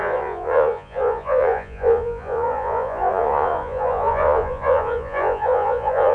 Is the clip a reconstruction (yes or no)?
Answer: yes